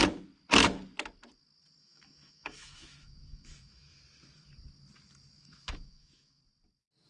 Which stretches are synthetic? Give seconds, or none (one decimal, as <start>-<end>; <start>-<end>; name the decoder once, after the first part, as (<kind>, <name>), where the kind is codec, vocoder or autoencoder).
1.8-4.0 (autoencoder, DAC-VAE); 5.4-6.4